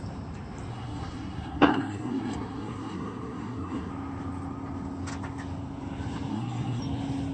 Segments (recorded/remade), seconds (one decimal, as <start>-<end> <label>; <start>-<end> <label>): 0.0-0.7 recorded; 0.7-3.9 remade; 3.9-6.3 recorded; 6.3-6.8 remade; 6.8-7.3 recorded